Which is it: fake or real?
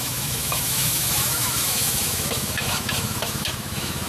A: fake